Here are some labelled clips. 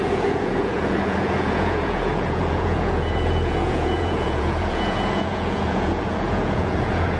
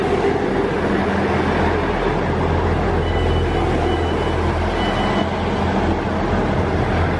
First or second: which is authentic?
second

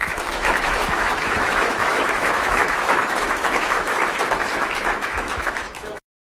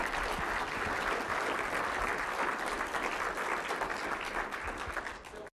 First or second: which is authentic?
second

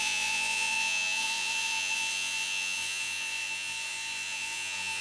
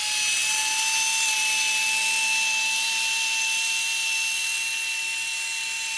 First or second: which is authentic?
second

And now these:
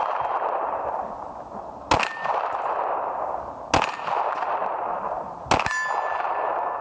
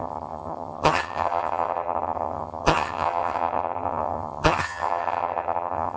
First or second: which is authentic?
first